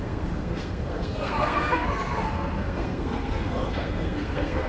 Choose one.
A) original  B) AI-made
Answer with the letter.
B